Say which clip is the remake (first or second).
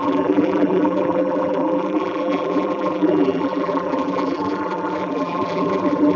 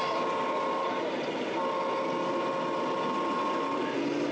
first